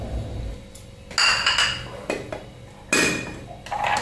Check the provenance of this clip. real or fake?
real